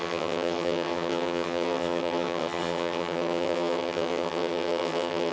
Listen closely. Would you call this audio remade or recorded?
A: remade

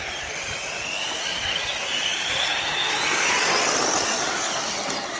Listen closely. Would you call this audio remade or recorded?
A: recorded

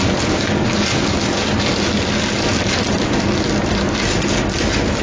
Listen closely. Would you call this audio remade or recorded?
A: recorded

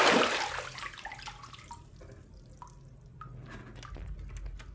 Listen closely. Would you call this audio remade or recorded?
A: recorded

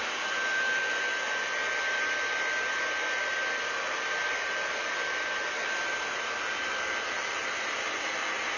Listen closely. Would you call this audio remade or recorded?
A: recorded